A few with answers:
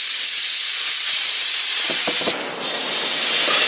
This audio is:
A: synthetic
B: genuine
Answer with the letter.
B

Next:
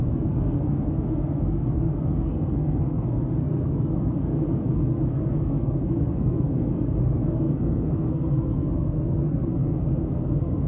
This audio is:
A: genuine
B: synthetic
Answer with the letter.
B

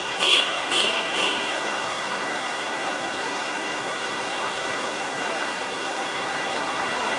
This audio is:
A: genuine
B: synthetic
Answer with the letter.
B